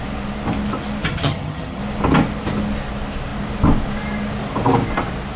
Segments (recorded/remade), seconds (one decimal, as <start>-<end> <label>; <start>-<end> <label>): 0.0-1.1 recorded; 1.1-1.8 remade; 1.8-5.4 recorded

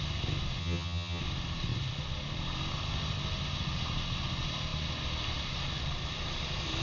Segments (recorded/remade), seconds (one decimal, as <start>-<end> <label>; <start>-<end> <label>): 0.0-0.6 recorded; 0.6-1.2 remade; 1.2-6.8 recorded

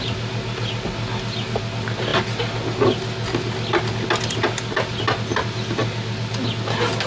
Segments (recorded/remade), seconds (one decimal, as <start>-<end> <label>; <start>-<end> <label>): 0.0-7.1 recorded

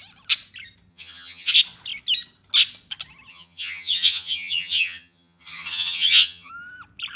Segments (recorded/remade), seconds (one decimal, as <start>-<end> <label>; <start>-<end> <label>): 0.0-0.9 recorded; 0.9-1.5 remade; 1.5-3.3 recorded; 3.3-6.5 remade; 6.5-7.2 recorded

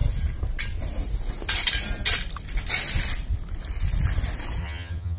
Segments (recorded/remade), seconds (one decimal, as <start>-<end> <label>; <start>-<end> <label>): 0.0-4.6 recorded; 4.6-5.2 remade